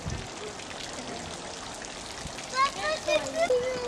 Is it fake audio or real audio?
real